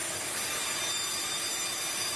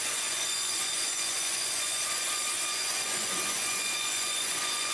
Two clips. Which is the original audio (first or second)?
first